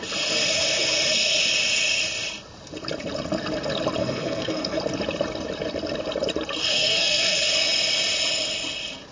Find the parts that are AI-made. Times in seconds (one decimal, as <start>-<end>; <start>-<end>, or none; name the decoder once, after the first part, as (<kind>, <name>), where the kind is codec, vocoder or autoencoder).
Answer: 4.0-4.8 (codec, SNAC); 6.6-7.5